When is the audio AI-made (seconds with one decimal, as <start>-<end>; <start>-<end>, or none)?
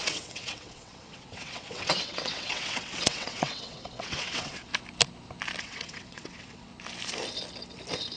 0.0-4.7; 5.6-6.7